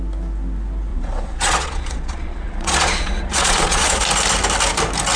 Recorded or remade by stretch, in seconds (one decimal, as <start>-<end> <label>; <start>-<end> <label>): 0.0-0.9 recorded; 0.9-4.0 remade; 4.0-5.2 recorded